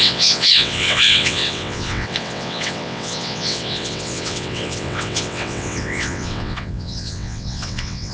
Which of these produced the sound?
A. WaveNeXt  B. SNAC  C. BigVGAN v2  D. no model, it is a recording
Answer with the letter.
A